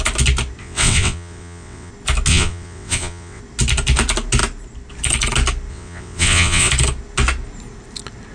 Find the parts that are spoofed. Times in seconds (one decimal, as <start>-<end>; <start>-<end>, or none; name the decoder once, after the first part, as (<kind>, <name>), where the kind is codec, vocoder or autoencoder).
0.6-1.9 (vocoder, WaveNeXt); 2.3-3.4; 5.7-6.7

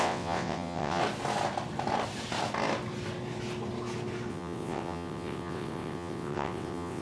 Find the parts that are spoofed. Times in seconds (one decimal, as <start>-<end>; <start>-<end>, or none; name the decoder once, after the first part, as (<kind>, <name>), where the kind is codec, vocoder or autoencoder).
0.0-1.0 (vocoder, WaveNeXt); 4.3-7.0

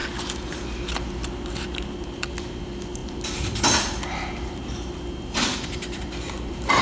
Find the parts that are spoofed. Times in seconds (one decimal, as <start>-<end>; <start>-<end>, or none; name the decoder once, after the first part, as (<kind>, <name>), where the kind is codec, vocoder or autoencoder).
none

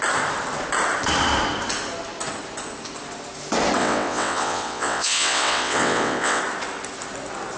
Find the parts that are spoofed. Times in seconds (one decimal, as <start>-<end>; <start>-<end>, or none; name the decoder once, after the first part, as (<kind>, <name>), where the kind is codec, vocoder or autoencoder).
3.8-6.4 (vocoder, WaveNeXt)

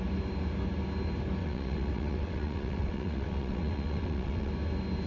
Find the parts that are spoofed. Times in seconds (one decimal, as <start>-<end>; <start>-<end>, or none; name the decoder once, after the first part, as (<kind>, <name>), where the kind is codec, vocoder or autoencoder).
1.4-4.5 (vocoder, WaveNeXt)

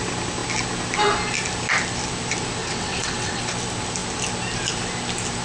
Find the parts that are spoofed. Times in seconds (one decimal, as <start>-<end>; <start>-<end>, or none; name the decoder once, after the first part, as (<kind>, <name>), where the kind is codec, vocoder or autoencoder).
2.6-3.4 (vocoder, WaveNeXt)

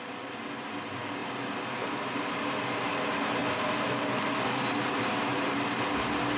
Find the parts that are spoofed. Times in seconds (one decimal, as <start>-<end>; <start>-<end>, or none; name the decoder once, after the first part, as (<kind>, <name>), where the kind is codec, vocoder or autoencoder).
none

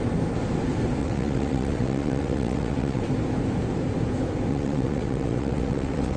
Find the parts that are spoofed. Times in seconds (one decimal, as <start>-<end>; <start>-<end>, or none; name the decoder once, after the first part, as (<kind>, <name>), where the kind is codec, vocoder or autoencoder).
1.0-3.0 (vocoder, WaveNeXt); 4.5-6.2